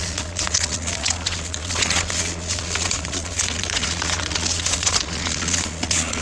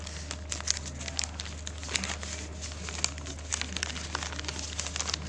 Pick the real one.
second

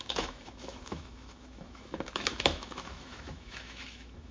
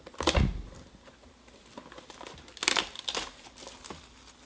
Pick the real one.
second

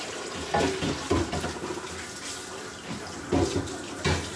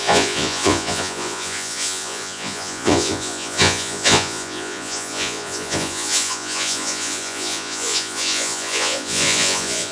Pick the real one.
first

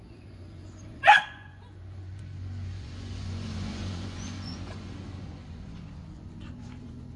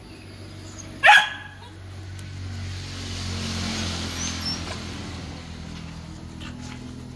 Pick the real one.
second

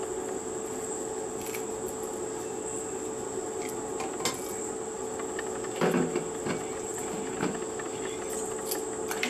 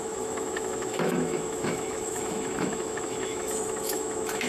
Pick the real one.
first